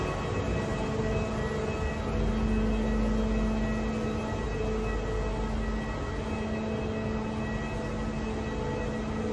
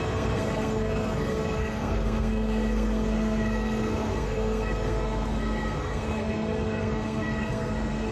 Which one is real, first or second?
first